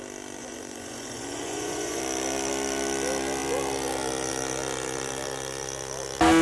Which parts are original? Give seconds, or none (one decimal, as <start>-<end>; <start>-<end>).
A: 0.0-0.4; 2.0-6.4